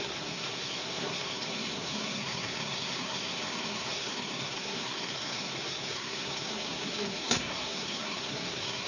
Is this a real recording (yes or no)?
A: no